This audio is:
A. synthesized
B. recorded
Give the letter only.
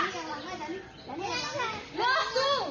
B